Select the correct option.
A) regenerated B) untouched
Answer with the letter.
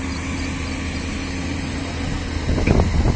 B